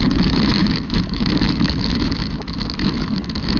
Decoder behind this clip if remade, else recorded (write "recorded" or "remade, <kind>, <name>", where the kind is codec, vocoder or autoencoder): remade, autoencoder, DAC-VAE